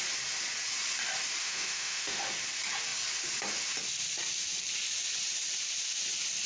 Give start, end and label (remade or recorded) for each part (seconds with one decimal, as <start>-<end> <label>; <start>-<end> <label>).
0.0-1.4 recorded; 1.4-2.2 remade; 2.2-6.5 recorded